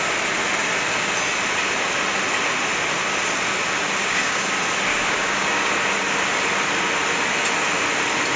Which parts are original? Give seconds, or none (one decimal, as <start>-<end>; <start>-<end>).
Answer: 0.0-4.0; 4.5-4.9; 5.7-8.4